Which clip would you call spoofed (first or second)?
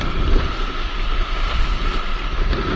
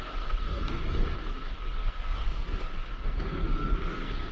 second